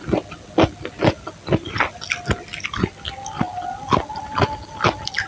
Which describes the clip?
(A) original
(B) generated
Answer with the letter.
A